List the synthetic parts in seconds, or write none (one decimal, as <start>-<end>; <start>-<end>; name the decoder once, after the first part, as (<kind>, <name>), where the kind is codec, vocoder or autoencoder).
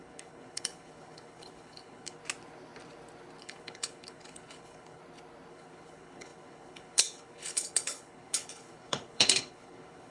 0.0-2.2 (codec, HILCodec); 3.4-5.0; 5.5-10.1